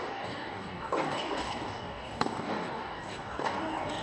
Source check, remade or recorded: remade